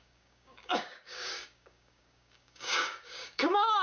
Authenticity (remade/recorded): remade